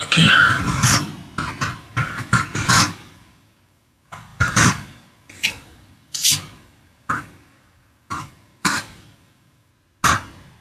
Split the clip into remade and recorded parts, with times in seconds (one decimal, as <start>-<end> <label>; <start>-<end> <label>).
0.0-1.1 remade; 1.1-1.8 recorded; 1.8-9.7 remade; 9.7-10.6 recorded